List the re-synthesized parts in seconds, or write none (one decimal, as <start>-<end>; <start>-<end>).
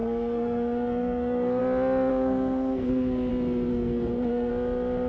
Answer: 0.0-1.6; 2.1-3.3; 3.7-4.5